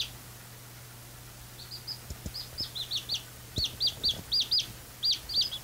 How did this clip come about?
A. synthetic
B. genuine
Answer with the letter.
B